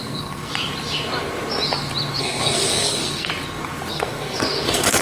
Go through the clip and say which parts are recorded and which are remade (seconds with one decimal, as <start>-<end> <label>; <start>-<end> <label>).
0.0-0.5 remade; 0.5-2.2 recorded; 2.2-3.3 remade; 3.3-3.9 recorded; 3.9-5.0 remade